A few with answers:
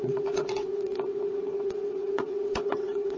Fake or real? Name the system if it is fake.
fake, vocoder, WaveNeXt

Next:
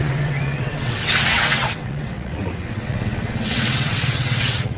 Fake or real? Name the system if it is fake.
fake, vocoder, WaveNeXt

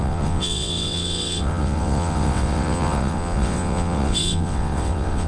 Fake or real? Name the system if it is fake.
fake, vocoder, WaveNeXt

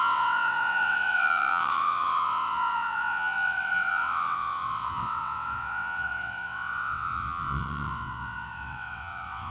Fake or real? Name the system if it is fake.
fake, vocoder, WaveNeXt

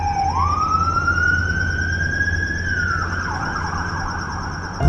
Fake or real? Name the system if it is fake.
real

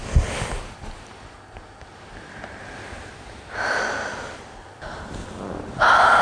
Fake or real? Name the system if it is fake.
real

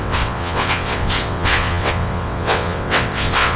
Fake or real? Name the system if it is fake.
fake, vocoder, WaveNeXt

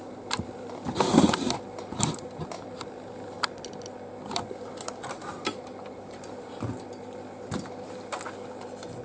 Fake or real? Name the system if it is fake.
real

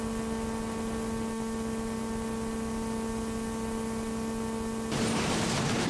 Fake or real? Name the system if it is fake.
real